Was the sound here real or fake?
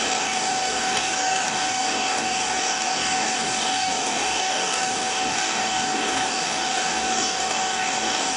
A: fake